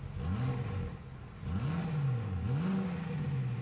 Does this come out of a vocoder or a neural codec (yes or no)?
no